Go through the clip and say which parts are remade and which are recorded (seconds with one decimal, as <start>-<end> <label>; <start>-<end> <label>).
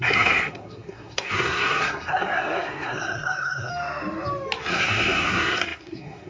0.0-3.7 remade; 3.7-4.7 recorded; 4.7-6.3 remade